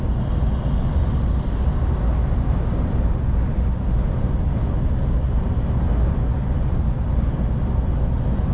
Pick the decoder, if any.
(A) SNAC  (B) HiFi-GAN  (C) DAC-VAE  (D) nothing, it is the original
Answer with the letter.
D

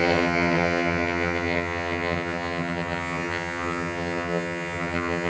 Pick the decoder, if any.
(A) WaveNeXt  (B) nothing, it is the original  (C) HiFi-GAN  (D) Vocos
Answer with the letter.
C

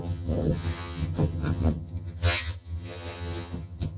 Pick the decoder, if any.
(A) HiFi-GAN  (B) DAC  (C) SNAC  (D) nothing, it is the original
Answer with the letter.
A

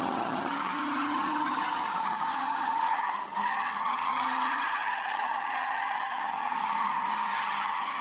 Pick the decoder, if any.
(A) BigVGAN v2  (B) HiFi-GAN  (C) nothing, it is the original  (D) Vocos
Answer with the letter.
B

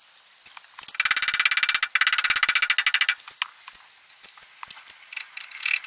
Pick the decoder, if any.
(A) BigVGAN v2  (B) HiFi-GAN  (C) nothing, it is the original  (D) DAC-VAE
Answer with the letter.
C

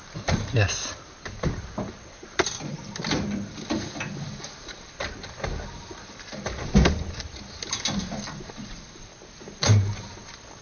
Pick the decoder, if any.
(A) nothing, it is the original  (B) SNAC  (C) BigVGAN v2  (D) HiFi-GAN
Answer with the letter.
A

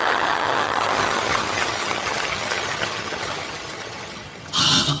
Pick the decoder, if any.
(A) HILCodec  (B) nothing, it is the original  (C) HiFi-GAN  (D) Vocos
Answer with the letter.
C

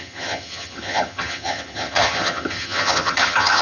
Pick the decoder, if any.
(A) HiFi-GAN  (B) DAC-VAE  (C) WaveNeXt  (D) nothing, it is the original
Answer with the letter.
A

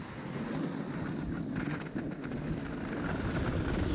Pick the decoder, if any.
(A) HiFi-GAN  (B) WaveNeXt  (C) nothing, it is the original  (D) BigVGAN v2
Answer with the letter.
C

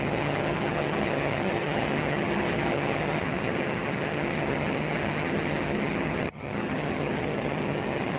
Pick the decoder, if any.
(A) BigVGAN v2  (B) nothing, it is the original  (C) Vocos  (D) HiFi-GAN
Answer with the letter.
D